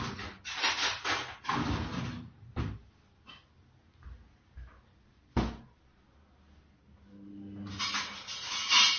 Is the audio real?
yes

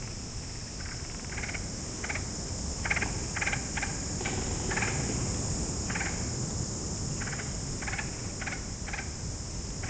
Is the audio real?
yes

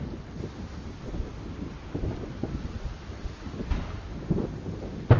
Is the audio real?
yes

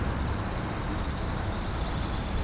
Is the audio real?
no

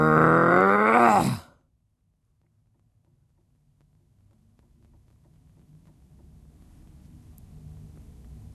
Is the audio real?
yes